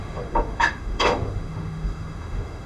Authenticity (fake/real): fake